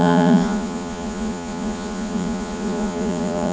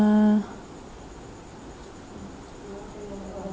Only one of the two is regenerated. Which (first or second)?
first